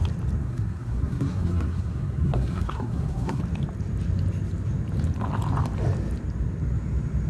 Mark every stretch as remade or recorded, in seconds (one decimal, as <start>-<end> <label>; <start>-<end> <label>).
0.0-0.4 recorded; 0.4-3.4 remade; 3.4-7.3 recorded